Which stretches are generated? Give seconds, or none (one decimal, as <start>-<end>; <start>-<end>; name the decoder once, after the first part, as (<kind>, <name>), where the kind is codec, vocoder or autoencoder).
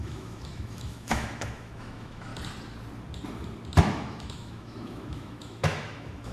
0.0-2.3 (autoencoder, DAC-VAE); 3.8-6.3